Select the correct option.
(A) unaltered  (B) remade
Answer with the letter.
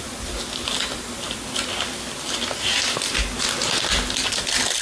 A